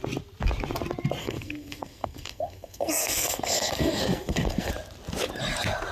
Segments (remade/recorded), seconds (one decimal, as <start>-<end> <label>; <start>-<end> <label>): 0.0-1.2 recorded; 1.2-4.7 remade; 4.7-5.9 recorded